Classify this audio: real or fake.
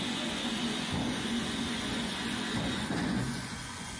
fake